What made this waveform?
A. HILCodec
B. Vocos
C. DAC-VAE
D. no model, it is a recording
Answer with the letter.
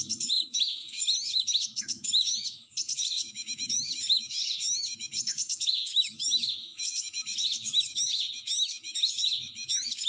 C